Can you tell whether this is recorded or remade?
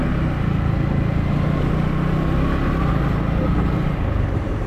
recorded